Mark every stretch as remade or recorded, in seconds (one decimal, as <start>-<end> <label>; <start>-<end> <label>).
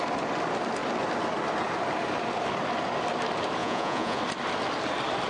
0.0-3.6 recorded; 3.6-4.2 remade; 4.2-5.3 recorded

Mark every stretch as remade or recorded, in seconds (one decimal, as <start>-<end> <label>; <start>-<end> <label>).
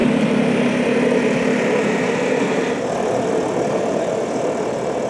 0.0-5.1 recorded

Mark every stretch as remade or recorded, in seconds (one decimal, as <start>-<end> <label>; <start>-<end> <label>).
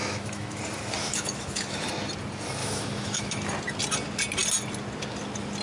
0.0-0.6 remade; 0.6-1.0 recorded; 1.0-1.9 remade; 1.9-2.6 recorded; 2.6-3.5 remade; 3.5-5.6 recorded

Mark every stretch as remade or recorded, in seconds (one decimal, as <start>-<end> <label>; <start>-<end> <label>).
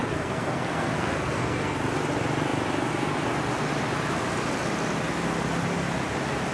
0.0-1.8 remade; 1.8-6.5 recorded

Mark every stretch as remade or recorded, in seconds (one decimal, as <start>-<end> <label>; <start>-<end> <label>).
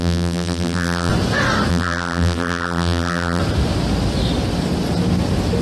0.0-1.1 remade; 1.1-1.7 recorded; 1.7-3.4 remade; 3.4-5.6 recorded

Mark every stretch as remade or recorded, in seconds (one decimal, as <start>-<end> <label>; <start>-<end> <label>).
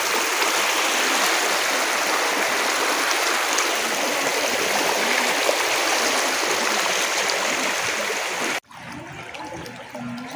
0.0-10.4 recorded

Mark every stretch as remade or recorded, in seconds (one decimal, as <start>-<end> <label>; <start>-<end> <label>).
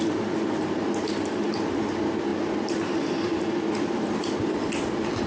0.0-5.3 recorded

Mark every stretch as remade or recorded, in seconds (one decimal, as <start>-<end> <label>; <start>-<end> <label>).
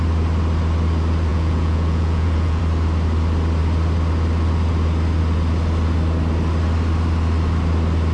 0.0-1.3 recorded; 1.3-2.6 remade; 2.6-8.1 recorded